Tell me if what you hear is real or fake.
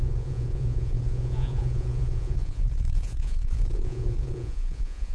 fake